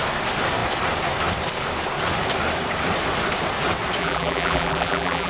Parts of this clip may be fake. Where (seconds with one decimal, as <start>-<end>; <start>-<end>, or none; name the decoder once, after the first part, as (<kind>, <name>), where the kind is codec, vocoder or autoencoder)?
4.0-5.3 (vocoder, BigVGAN v2)